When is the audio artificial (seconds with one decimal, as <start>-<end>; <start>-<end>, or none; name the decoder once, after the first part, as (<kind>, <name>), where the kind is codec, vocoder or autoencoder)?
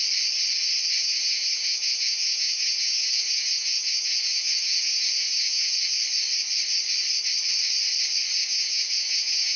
1.0-5.8 (vocoder, Vocos); 8.3-9.6